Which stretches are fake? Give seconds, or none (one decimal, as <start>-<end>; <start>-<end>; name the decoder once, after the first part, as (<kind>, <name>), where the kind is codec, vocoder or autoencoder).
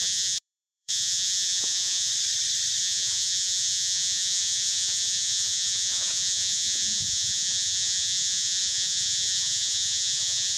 0.0-2.1 (vocoder, Vocos); 2.8-10.6